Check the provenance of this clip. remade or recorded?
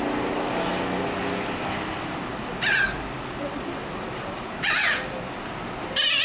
recorded